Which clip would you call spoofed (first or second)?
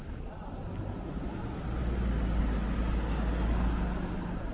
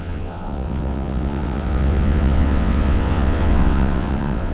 second